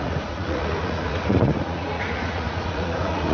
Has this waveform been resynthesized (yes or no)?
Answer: yes